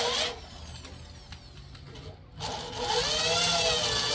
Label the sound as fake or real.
real